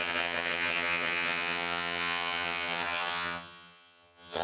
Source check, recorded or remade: remade